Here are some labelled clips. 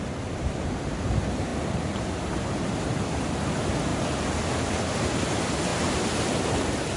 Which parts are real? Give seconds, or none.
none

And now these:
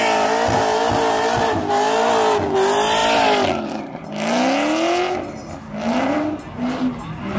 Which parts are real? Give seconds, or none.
0.0-7.4

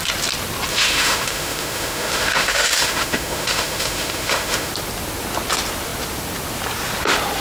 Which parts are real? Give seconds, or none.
0.0-0.7; 4.7-7.4

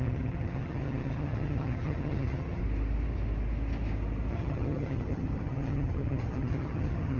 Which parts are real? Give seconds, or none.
2.6-4.3

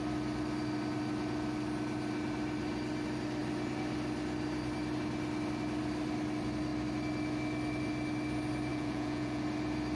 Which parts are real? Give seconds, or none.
0.0-8.7; 9.4-10.0

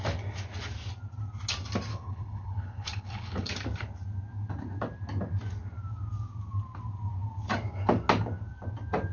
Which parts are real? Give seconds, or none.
0.0-1.9; 3.5-9.1

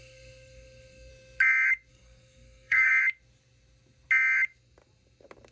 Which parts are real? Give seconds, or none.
1.1-1.9; 2.9-5.5